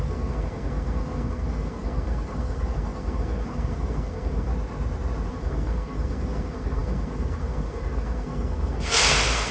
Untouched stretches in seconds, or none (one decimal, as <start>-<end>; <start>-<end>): 4.5-5.3